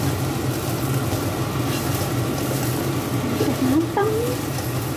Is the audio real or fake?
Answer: real